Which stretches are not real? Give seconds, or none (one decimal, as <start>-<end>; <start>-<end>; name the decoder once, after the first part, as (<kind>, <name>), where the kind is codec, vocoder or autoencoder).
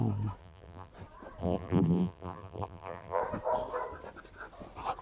0.4-0.9 (vocoder, BigVGAN v2); 1.4-3.2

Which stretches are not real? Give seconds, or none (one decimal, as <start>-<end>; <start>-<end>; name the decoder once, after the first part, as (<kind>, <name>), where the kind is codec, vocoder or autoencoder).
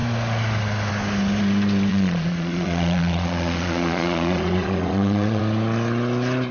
1.9-5.4 (vocoder, Vocos)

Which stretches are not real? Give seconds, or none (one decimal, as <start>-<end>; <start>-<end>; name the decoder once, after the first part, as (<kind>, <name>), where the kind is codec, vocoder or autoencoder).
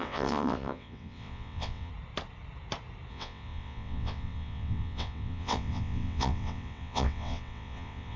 0.0-1.9 (vocoder, WaveNeXt); 3.1-8.2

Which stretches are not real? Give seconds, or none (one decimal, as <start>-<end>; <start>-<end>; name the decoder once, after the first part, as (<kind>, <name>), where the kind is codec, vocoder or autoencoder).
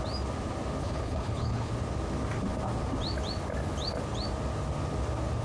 0.8-1.7 (codec, HILCodec)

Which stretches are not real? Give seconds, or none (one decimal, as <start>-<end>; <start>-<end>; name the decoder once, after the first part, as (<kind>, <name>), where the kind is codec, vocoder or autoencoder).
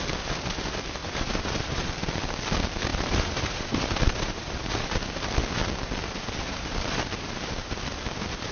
1.0-1.9 (vocoder, BigVGAN v2); 2.9-5.0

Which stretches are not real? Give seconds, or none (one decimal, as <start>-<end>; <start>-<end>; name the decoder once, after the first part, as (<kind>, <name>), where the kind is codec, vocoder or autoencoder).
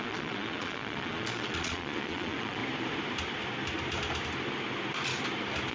0.0-2.6 (vocoder, Vocos)